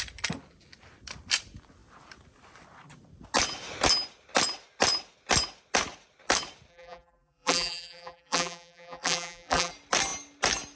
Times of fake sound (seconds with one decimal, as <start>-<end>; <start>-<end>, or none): 6.7-9.7